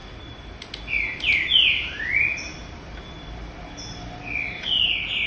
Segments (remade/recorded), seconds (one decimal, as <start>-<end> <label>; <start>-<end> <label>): 0.0-5.3 recorded